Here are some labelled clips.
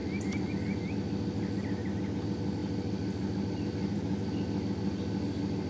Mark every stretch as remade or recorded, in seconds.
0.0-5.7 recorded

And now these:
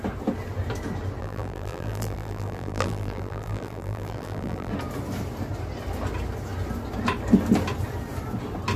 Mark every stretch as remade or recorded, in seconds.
0.0-1.2 recorded; 1.2-4.7 remade; 4.7-8.8 recorded